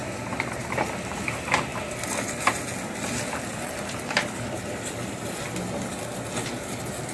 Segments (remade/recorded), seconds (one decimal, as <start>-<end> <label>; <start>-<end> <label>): 0.0-0.6 remade; 0.6-1.7 recorded; 1.7-5.4 remade; 5.4-7.1 recorded